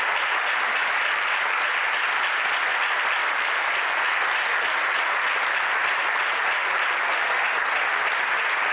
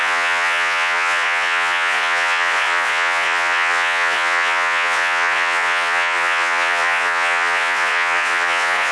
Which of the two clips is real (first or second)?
first